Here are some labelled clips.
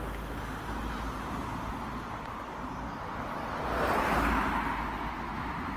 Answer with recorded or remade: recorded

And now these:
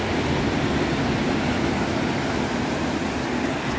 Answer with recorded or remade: recorded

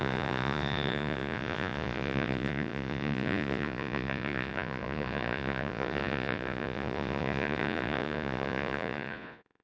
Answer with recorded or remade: remade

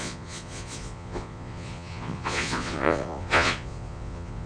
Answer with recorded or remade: remade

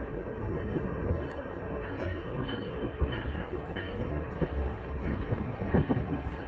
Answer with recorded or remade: remade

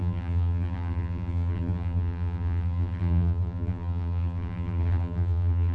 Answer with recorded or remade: remade